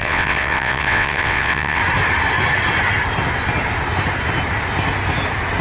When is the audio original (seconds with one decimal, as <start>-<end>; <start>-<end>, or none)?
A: 1.8-5.6